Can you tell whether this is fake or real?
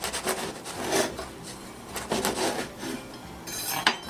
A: real